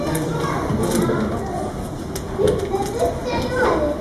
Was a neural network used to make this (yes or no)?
no